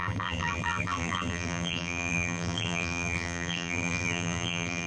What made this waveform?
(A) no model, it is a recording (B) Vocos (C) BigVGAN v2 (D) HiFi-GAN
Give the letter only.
C